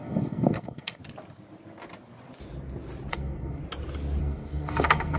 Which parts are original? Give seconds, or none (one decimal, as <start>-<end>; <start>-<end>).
1.0-3.1; 3.6-4.2

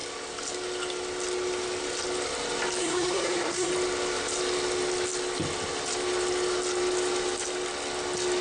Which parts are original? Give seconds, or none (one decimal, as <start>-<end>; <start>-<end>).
0.0-2.8; 3.7-8.4